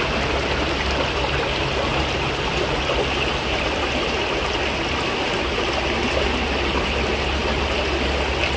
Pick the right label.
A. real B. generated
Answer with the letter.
A